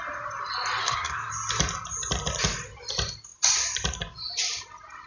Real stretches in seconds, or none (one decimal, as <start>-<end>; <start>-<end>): 0.0-0.8; 1.3-5.1